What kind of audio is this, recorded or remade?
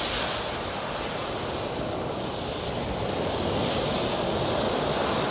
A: recorded